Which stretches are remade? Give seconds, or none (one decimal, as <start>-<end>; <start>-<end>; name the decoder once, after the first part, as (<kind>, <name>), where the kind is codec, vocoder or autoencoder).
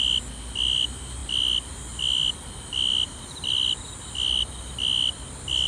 none